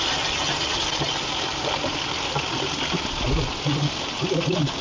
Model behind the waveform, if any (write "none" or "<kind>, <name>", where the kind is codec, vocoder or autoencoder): none